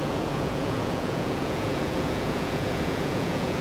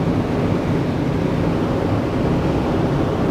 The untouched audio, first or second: second